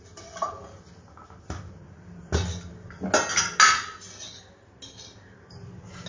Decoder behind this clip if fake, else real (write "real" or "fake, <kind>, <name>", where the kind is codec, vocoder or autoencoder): real